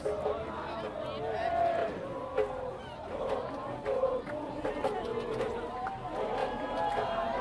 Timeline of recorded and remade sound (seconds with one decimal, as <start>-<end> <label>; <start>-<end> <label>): 0.0-1.8 recorded; 1.8-2.8 remade; 2.8-7.4 recorded